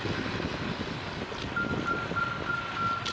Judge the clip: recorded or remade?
recorded